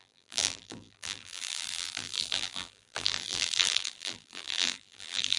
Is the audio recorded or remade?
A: remade